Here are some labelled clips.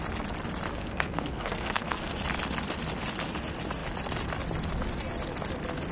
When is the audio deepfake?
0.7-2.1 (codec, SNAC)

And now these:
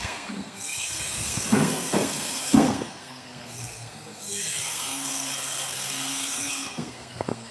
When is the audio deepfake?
0.0-7.5 (codec, SNAC)

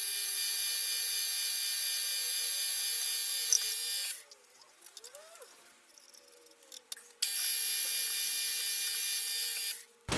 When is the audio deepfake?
none

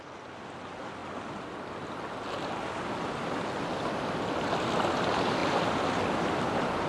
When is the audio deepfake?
none

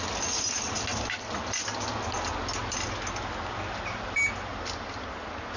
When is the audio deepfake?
none